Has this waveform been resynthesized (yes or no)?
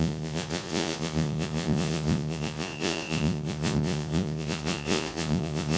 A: yes